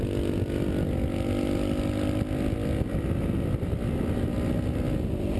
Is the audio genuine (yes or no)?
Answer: yes